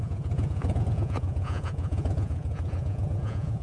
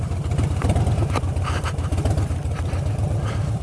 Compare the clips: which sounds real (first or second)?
second